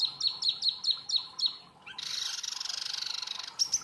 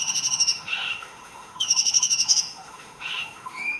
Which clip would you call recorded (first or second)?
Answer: first